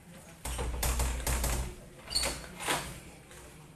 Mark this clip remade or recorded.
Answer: recorded